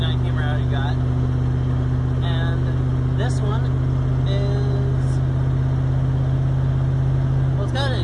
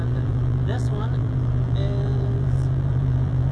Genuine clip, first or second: first